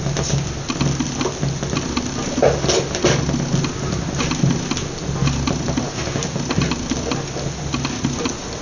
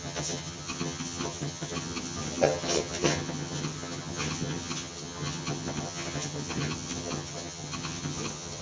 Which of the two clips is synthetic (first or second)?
second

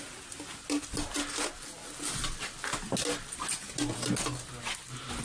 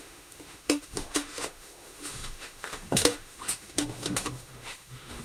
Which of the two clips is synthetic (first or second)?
second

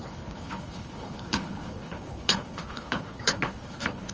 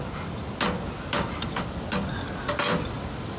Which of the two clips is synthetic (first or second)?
first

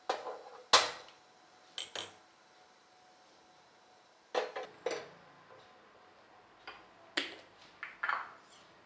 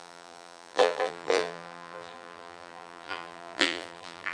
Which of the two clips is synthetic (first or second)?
second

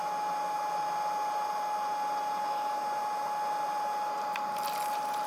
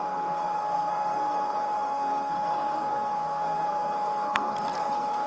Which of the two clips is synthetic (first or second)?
second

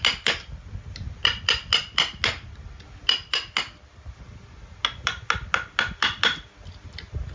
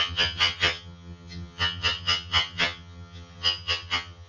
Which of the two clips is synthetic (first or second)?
second